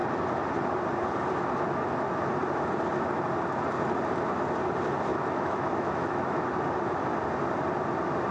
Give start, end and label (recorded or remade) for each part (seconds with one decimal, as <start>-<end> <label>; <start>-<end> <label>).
0.0-5.1 recorded; 5.1-6.5 remade; 6.5-8.3 recorded